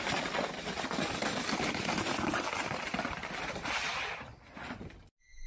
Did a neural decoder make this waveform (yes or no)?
no